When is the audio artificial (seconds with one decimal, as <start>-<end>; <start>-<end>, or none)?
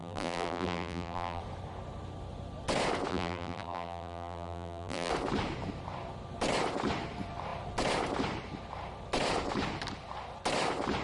0.0-1.4; 3.1-5.1